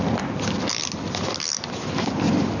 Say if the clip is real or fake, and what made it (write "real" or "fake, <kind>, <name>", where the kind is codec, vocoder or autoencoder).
real